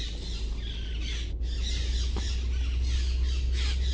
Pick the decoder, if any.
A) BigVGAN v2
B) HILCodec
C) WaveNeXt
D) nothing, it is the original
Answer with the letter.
D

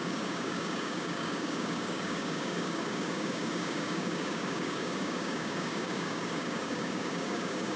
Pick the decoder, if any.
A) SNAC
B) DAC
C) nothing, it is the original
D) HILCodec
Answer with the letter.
B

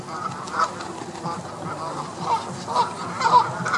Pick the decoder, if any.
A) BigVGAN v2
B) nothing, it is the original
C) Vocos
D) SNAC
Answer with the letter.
B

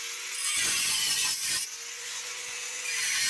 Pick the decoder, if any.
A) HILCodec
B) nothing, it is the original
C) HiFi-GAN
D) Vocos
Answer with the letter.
D